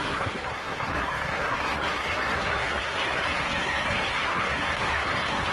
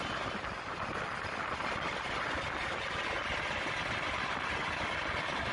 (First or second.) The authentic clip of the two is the second